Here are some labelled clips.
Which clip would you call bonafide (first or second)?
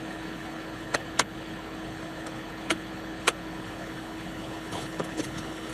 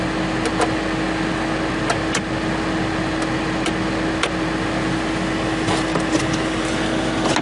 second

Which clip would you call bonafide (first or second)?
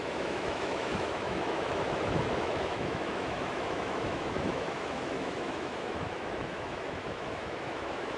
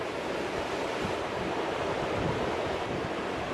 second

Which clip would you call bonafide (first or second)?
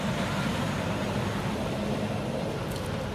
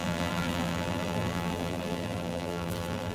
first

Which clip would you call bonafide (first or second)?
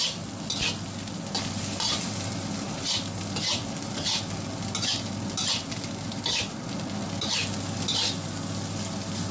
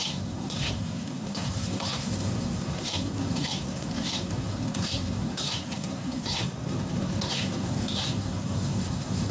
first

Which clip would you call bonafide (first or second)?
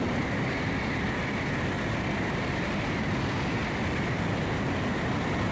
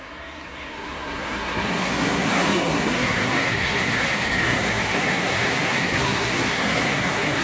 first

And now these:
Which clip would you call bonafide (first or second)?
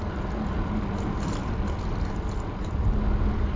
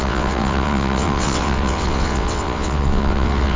first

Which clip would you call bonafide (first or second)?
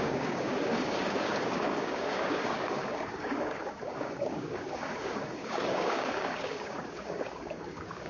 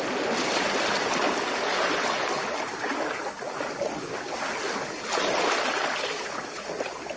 second